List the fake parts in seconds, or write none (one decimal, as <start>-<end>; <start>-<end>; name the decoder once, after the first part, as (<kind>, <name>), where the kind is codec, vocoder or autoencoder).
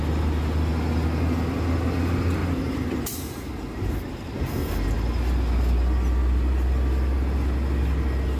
2.4-4.7 (vocoder, BigVGAN v2)